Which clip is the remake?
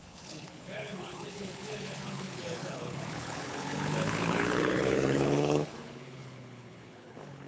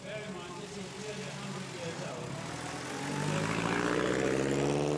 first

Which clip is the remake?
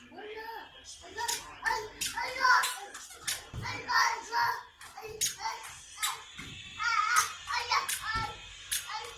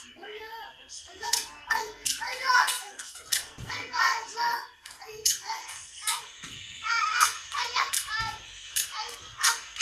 second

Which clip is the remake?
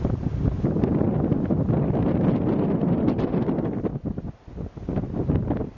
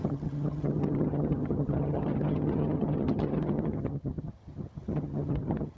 second